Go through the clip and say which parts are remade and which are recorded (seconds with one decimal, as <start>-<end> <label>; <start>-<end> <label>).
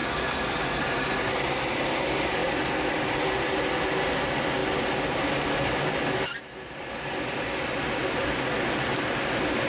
0.0-9.7 recorded